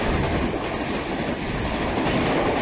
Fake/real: real